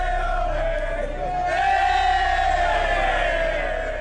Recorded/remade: recorded